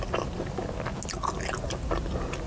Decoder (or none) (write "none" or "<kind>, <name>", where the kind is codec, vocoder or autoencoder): none